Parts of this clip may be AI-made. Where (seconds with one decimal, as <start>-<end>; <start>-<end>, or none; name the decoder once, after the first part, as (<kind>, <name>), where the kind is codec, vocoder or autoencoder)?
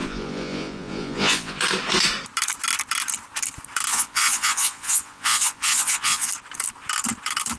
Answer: 0.0-1.6 (vocoder, Vocos); 3.9-6.3